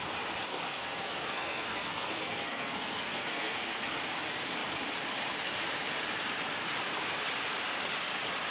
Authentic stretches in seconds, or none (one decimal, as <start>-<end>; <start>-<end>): 0.0-0.5; 4.0-8.5